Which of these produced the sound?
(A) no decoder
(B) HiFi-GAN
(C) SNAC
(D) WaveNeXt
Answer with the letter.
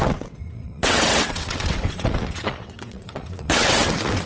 D